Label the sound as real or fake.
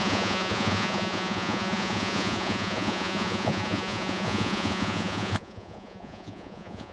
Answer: fake